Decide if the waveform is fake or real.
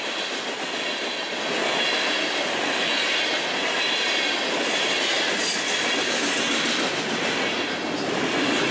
real